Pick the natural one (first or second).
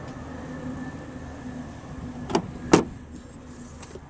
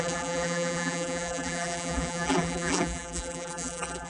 first